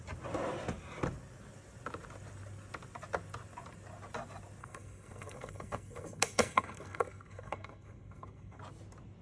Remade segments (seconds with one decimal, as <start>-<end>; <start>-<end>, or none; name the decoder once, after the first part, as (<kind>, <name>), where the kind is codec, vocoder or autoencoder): 4.6-8.6 (codec, SNAC)